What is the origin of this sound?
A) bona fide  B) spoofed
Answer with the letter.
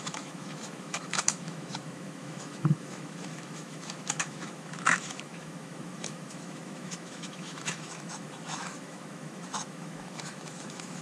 B